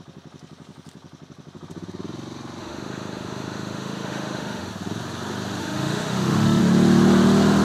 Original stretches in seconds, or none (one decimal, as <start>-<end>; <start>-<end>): 0.0-2.6; 4.7-5.6; 6.6-7.6